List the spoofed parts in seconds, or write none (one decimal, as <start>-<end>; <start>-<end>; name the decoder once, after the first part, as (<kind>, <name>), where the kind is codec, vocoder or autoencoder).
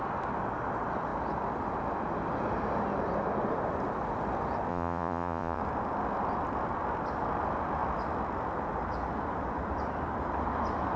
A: 4.7-5.6 (vocoder, Vocos)